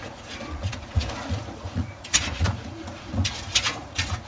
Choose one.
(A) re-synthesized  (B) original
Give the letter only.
A